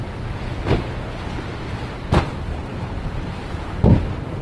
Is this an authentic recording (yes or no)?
yes